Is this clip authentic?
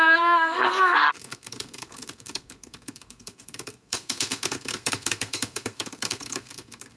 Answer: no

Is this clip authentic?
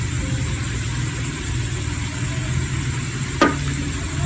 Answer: yes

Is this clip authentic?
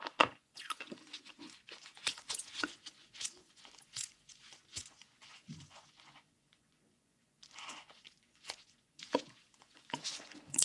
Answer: no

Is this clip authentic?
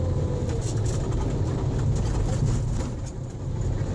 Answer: yes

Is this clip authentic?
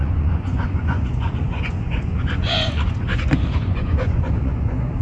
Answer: no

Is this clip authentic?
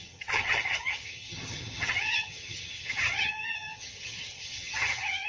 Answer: no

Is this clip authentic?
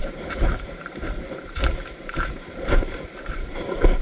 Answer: no